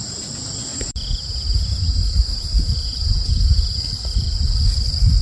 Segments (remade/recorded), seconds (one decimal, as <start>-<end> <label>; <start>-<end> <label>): 0.0-0.7 recorded; 0.7-3.8 remade; 3.8-5.2 recorded